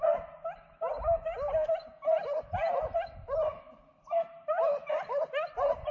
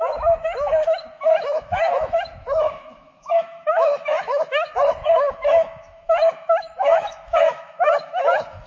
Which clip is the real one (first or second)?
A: first